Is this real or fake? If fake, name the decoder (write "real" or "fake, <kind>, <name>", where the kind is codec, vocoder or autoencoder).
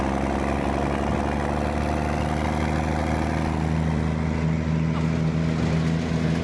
real